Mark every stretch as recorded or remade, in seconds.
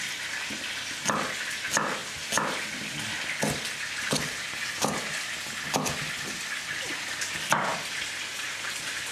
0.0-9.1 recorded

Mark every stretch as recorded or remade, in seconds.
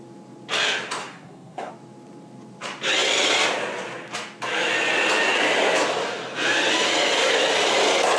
0.0-1.0 recorded; 1.0-1.7 remade; 1.7-8.2 recorded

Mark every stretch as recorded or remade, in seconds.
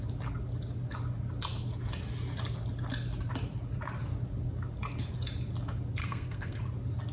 0.0-6.0 recorded; 6.0-6.6 remade; 6.6-7.1 recorded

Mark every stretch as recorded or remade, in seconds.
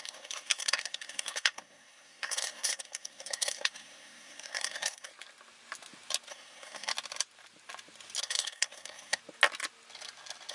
0.0-5.1 remade; 5.1-6.3 recorded; 6.3-6.9 remade; 6.9-8.2 recorded; 8.2-9.2 remade; 9.2-10.5 recorded